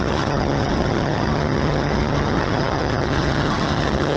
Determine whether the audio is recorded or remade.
remade